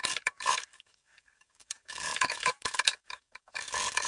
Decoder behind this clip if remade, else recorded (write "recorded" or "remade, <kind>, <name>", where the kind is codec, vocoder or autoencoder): remade, codec, DAC